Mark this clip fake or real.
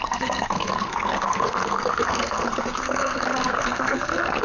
fake